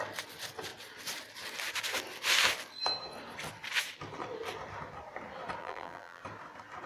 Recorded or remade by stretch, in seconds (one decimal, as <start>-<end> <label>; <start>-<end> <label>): 0.0-5.6 recorded; 5.6-6.2 remade; 6.2-6.9 recorded